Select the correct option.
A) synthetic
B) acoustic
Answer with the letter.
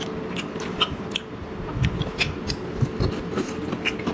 B